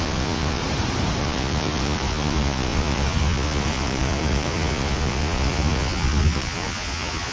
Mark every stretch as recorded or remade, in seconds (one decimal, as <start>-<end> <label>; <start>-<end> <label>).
0.0-0.6 remade; 0.6-1.2 recorded; 1.2-7.3 remade